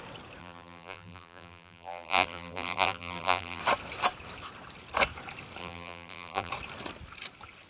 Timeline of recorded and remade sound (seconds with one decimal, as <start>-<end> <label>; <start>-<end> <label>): 0.0-0.4 recorded; 0.4-3.6 remade; 3.6-5.6 recorded; 5.6-6.5 remade; 6.5-7.7 recorded